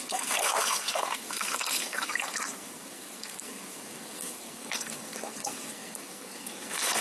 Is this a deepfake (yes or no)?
yes